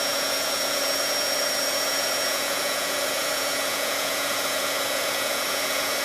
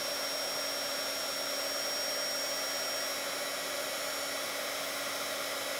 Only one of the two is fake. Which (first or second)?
first